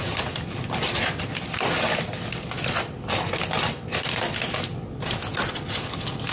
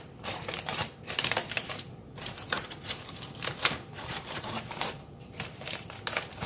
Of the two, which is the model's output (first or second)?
second